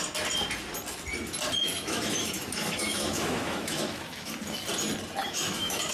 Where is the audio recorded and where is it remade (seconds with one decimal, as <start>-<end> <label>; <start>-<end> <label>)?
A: 0.0-1.6 recorded; 1.6-4.3 remade; 4.3-5.2 recorded; 5.2-5.9 remade

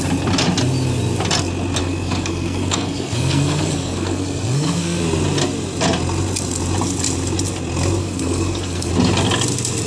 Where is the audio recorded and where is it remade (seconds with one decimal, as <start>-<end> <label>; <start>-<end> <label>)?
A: 0.0-1.8 recorded; 1.8-5.0 remade; 5.0-8.0 recorded; 8.0-8.9 remade; 8.9-9.9 recorded

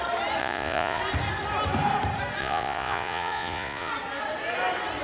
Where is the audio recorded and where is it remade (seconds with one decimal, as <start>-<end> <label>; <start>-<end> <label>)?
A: 0.0-0.4 recorded; 0.4-1.0 remade; 1.0-2.4 recorded; 2.4-3.9 remade; 3.9-5.0 recorded

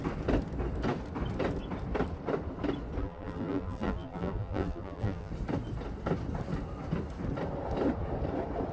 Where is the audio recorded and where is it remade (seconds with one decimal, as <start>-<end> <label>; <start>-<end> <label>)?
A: 0.0-3.0 recorded; 3.0-5.3 remade; 5.3-8.7 recorded

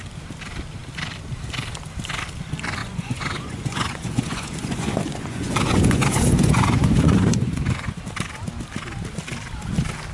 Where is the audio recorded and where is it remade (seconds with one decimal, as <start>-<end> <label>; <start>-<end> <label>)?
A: 0.0-2.8 recorded; 2.8-8.0 remade; 8.0-10.1 recorded